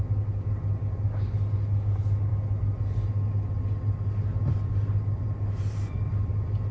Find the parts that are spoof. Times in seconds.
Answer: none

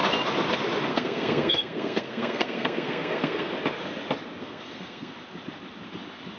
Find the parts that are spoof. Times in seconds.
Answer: 0.9-3.5; 4.4-5.1

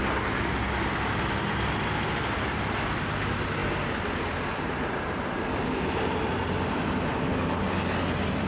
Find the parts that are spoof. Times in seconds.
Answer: none